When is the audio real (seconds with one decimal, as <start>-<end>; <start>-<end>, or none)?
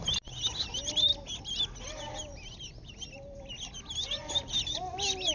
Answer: 0.0-5.3